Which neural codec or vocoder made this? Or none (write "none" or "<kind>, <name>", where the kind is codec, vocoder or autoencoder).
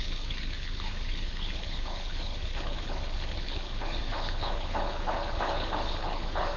codec, HILCodec